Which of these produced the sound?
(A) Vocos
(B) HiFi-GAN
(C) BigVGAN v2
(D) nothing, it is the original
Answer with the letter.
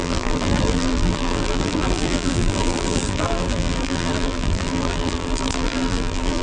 C